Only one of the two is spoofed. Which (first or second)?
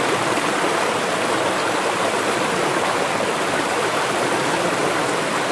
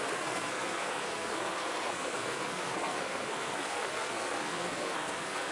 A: second